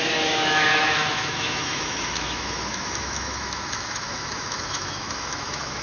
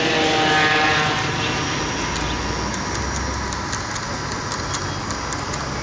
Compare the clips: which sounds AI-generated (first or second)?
first